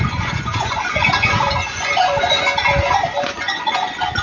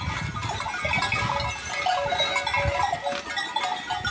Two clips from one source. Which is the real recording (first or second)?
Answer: second